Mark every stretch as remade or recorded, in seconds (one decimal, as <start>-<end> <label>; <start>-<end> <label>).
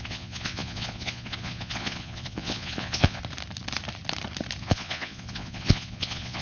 0.0-3.2 remade; 3.2-4.6 recorded; 4.6-6.4 remade